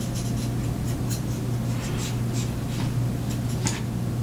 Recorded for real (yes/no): yes